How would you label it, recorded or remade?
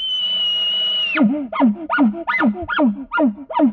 recorded